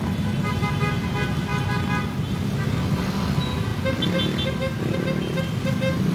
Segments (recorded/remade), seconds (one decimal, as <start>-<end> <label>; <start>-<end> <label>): 0.0-6.1 recorded